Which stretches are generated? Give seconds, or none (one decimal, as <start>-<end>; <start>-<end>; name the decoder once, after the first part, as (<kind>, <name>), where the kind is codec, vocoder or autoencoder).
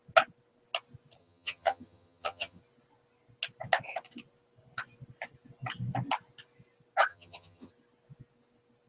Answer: 1.2-2.6 (vocoder, HiFi-GAN); 7.1-7.7